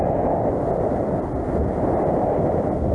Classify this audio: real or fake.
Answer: real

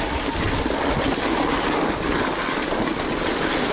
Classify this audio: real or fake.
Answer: real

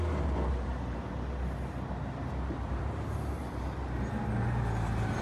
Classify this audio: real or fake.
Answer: real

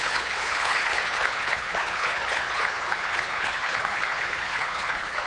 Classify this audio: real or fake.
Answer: fake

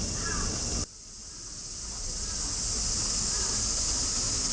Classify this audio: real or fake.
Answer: real